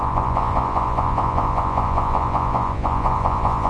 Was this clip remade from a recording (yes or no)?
yes